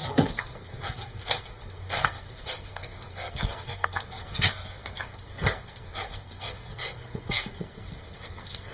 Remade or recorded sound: remade